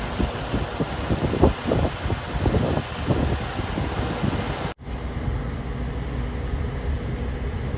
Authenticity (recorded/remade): recorded